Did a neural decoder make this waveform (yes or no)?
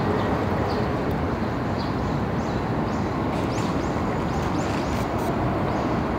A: no